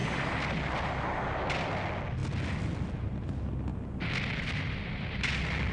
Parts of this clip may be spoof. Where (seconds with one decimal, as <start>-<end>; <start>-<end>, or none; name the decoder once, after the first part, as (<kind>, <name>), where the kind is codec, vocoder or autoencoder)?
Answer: none